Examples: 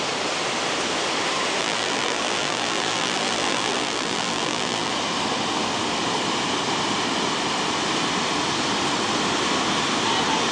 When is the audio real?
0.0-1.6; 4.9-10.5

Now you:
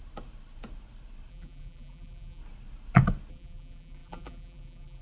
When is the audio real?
0.0-1.3; 2.4-3.3

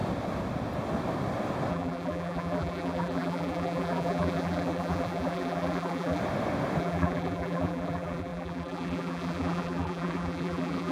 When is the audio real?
0.0-1.7; 6.2-6.8

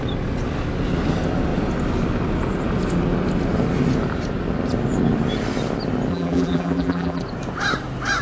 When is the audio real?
0.0-6.1; 7.2-8.2